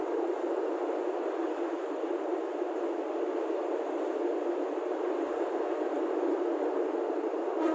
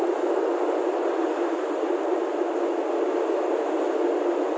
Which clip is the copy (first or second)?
first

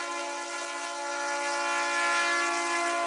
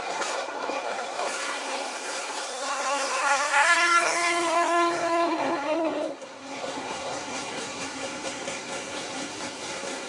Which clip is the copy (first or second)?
second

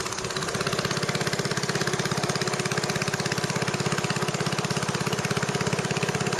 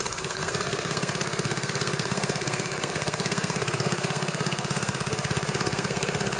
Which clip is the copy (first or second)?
second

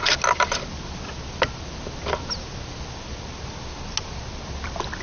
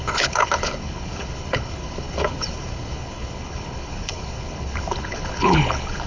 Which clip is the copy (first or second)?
second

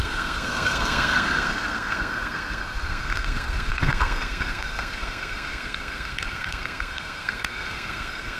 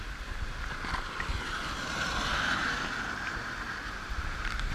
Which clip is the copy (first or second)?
first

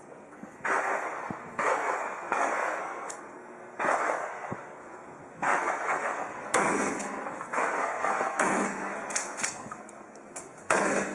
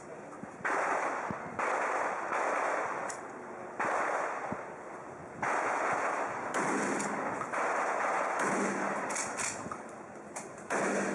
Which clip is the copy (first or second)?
first